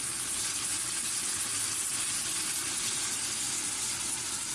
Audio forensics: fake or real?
real